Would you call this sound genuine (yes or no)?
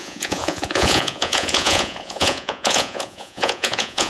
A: no